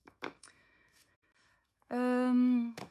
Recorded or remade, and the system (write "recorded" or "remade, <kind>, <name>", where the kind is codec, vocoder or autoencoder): remade, autoencoder, DAC-VAE